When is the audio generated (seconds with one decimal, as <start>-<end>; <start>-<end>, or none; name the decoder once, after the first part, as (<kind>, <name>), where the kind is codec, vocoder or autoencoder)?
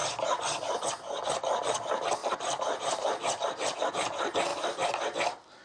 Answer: 2.2-3.9 (vocoder, BigVGAN v2); 4.5-5.6